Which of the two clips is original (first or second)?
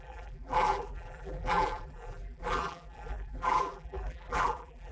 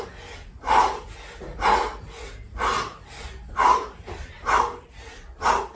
second